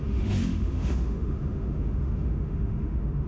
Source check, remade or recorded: remade